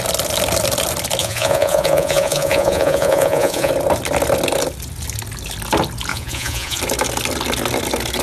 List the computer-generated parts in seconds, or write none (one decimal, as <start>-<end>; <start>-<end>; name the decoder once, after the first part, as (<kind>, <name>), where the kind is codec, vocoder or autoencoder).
1.2-3.7 (vocoder, Vocos); 6.1-6.8